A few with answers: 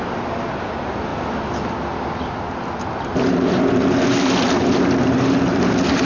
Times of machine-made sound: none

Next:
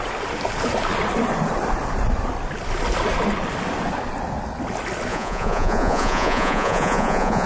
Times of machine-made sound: 5.1-7.5 (vocoder, Vocos)

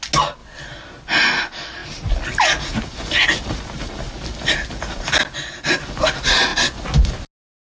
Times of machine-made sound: none

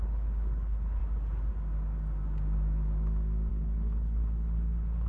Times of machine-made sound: 0.0-1.0 (codec, HILCodec); 3.5-5.1

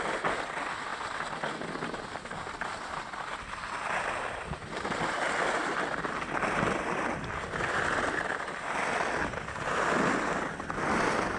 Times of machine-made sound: none